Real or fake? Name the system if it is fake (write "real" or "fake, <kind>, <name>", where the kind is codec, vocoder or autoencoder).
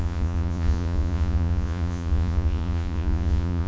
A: fake, vocoder, Vocos